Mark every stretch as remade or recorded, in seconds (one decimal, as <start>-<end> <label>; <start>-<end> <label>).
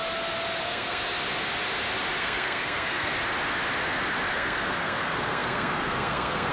0.0-0.6 recorded; 0.6-1.0 remade; 1.0-2.2 recorded; 2.2-3.1 remade; 3.1-4.3 recorded; 4.3-6.5 remade